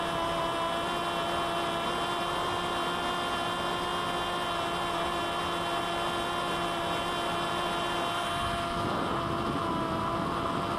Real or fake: real